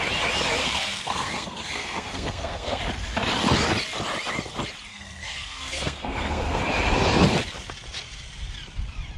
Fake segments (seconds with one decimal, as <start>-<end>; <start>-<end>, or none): 0.6-2.8; 4.9-6.6